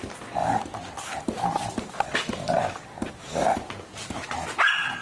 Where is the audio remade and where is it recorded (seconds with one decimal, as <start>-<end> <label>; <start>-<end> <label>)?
0.0-5.0 recorded